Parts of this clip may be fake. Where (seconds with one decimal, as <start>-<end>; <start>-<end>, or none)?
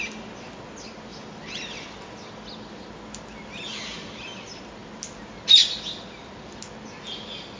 1.1-2.9